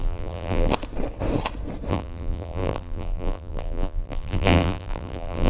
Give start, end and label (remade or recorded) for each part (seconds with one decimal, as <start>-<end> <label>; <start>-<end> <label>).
0.0-0.7 remade; 0.7-1.9 recorded; 1.9-5.5 remade